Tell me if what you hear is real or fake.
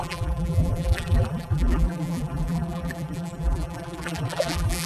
fake